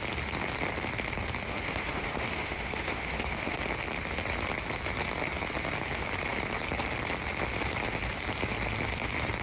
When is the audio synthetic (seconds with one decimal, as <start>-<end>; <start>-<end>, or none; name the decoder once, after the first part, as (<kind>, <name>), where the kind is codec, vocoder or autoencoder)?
1.5-3.6 (autoencoder, DAC-VAE)